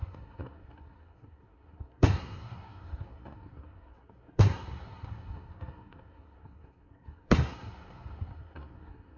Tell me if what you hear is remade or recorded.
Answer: remade